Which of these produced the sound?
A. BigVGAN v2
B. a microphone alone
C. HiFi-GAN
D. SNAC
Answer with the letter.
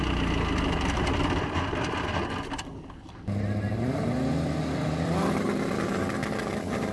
B